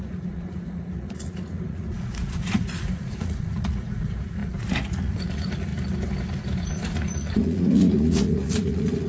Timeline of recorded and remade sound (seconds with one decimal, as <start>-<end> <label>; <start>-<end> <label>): 0.0-5.7 remade; 5.7-6.7 recorded; 6.7-9.1 remade